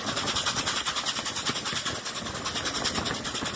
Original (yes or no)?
yes